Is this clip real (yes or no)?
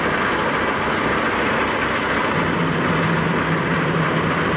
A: yes